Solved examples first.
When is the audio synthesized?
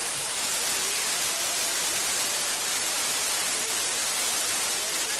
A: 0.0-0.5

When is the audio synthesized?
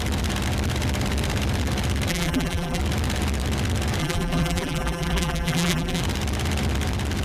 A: 2.1-2.8; 4.0-6.0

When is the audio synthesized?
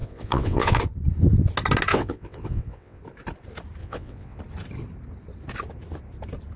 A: 0.0-0.8; 1.9-3.0; 3.8-4.4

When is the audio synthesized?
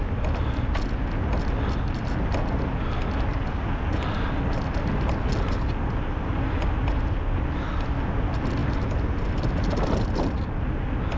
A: none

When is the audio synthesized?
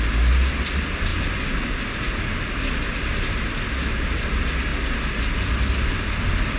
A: none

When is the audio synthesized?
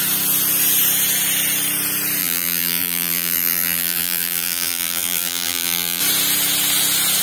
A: 2.2-6.0